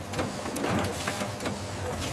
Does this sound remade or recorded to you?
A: recorded